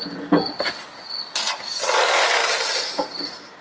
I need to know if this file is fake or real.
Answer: real